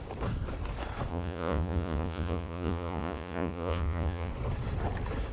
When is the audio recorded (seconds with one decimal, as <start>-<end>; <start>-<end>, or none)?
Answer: 0.0-1.1; 4.3-5.3